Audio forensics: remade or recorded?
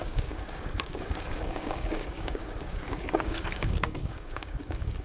remade